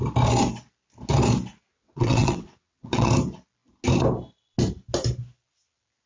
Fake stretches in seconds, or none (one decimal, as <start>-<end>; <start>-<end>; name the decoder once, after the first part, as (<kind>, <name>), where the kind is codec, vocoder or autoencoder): 1.7-3.1 (vocoder, WaveNeXt)